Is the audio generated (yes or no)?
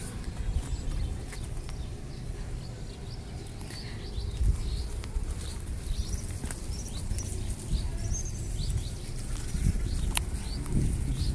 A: no